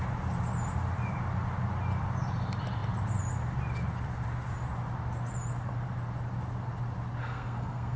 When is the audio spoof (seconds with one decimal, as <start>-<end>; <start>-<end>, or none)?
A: 7.2-8.0

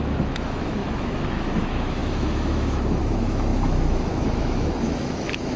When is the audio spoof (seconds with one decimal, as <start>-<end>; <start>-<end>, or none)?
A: 0.0-5.6

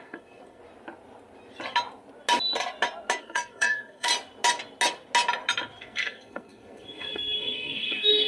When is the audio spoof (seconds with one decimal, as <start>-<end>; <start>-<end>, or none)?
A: 0.0-0.6; 3.2-4.1; 5.8-8.3

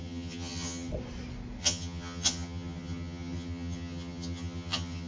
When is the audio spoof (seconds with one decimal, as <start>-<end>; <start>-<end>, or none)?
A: 0.0-0.9; 1.6-5.1

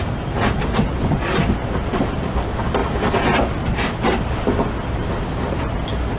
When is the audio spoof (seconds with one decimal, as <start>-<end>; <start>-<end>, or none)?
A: none